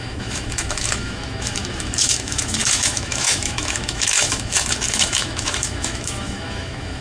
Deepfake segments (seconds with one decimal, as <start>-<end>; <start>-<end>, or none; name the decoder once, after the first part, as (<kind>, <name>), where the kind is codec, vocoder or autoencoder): 0.0-7.0 (autoencoder, DAC-VAE)